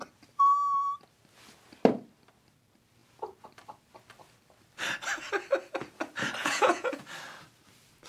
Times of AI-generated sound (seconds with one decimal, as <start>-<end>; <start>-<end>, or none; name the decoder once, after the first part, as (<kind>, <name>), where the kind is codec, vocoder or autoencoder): 6.4-7.0 (vocoder, Vocos)